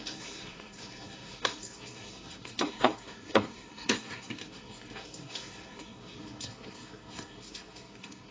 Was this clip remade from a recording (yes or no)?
yes